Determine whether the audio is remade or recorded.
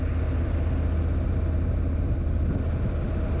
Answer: recorded